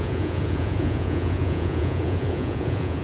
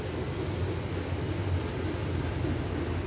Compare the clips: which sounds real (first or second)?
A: second